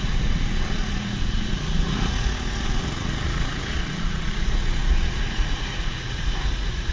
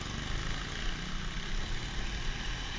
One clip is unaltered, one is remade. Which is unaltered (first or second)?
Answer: second